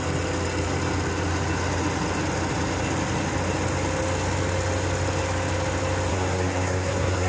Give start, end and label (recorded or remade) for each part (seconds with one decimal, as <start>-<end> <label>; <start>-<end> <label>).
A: 0.0-6.1 recorded; 6.1-7.3 remade